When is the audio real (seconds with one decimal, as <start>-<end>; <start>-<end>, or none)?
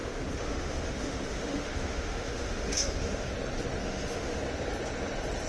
3.3-3.8; 4.4-5.5